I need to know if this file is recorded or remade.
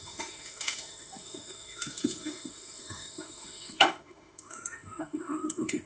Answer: remade